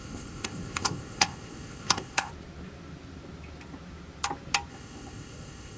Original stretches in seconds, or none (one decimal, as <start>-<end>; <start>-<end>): 2.3-4.7